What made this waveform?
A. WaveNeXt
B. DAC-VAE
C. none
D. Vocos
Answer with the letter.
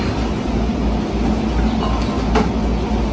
C